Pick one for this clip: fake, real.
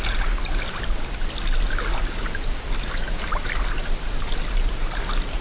real